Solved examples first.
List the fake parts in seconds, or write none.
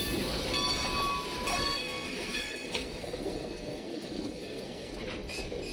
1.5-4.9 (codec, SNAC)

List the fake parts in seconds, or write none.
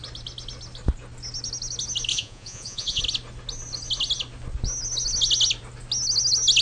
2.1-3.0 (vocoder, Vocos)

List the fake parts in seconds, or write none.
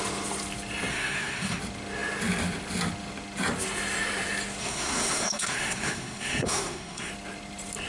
0.9-1.6 (codec, SNAC); 4.6-7.1